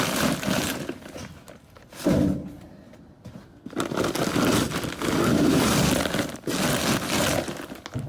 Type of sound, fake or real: real